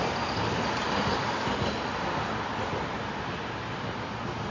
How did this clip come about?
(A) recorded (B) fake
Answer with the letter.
A